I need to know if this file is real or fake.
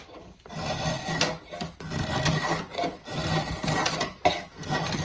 real